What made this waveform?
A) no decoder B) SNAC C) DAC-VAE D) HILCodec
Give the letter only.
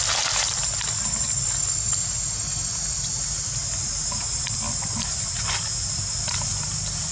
A